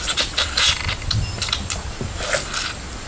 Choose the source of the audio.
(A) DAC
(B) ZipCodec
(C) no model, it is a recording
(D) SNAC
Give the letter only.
C